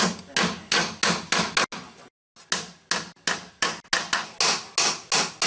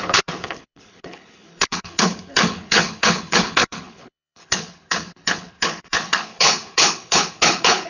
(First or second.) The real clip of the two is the first